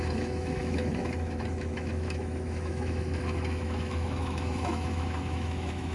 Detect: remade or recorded remade